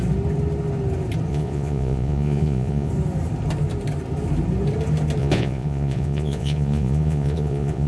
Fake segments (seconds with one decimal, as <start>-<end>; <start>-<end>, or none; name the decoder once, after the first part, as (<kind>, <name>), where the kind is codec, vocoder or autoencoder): 1.3-2.9 (vocoder, Vocos); 5.2-7.9